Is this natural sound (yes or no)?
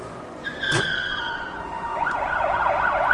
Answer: no